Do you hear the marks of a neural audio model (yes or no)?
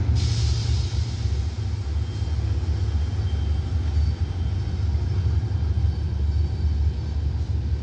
no